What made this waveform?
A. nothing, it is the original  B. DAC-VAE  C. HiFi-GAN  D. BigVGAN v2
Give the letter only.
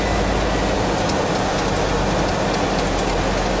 A